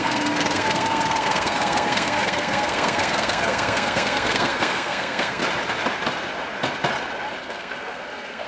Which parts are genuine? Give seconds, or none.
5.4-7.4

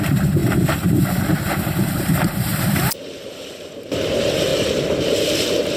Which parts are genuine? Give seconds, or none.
0.4-1.8; 4.5-5.0

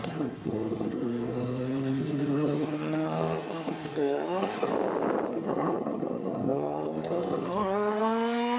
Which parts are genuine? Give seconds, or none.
4.7-5.3

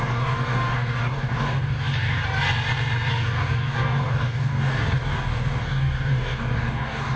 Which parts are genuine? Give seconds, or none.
2.2-3.1